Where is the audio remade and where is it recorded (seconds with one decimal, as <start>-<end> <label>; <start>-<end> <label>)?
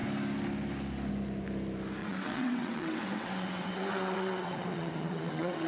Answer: 0.0-2.0 recorded; 2.0-5.7 remade